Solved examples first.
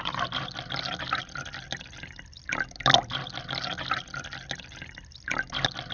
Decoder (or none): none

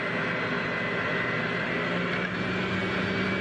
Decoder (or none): none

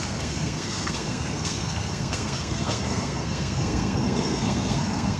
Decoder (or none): codec, SNAC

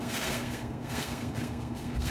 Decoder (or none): codec, SNAC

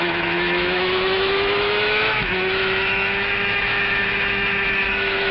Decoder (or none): autoencoder, DAC-VAE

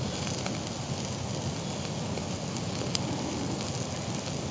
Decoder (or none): none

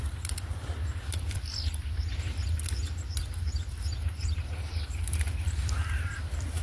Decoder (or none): vocoder, BigVGAN v2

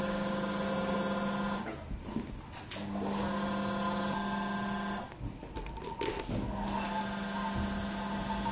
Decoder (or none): none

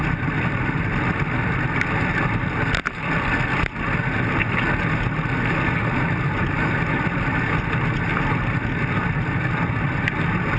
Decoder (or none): none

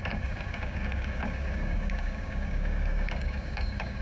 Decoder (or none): codec, DAC